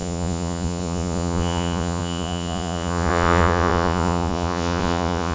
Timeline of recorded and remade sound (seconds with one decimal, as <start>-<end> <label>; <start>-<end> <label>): 0.0-5.3 remade